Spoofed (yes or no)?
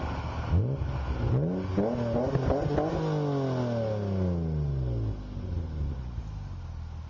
no